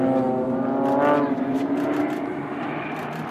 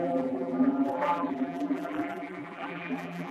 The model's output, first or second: second